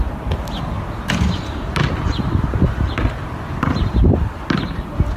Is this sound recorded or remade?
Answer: recorded